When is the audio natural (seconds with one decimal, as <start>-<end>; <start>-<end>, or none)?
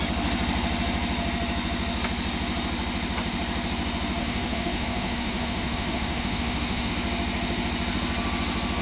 0.0-4.2; 6.9-8.8